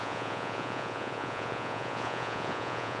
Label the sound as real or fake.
fake